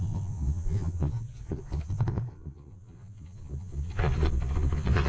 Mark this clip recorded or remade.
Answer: remade